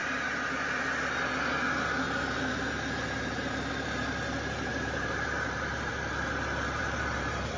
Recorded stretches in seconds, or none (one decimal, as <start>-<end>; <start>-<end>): 0.0-4.7; 5.9-6.8